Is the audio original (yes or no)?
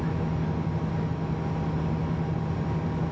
yes